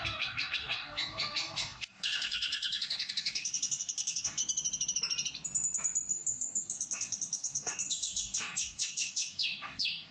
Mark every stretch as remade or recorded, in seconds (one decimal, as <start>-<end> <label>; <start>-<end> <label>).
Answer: 0.0-4.4 remade; 4.4-6.1 recorded; 6.1-10.1 remade